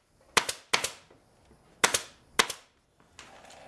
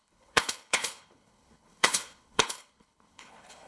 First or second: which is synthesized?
second